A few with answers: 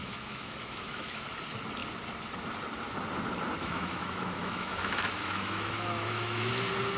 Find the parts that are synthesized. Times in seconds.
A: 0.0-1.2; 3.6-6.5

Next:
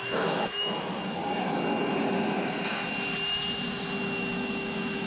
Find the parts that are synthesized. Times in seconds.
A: 0.0-1.2; 4.3-5.1

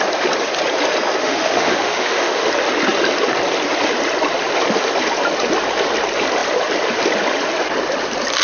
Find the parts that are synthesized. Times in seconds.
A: 1.2-2.5